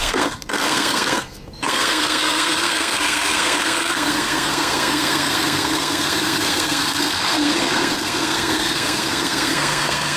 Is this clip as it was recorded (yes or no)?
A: no